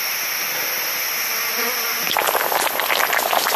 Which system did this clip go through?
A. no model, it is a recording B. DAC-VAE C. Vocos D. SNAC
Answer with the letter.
A